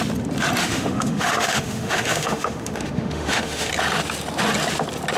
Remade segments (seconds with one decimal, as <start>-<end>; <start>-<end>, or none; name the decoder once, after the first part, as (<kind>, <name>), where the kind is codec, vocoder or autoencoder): 0.6-3.7 (autoencoder, DAC-VAE)